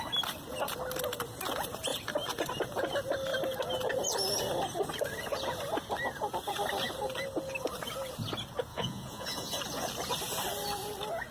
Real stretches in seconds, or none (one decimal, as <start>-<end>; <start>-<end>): 0.0-8.7; 9.6-11.3